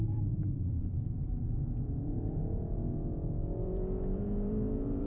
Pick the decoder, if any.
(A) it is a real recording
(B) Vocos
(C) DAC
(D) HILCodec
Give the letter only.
B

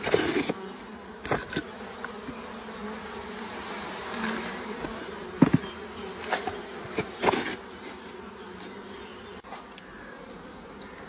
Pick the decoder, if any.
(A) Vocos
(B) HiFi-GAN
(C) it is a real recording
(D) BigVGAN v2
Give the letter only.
C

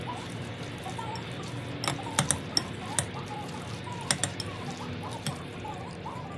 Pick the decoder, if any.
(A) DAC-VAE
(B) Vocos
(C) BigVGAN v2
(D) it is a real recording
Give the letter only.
D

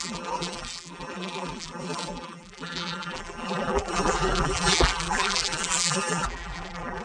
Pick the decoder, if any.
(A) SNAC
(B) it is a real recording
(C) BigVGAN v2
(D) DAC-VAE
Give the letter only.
C